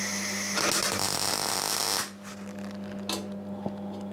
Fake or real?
real